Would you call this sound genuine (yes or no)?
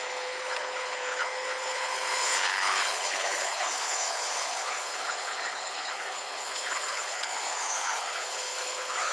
no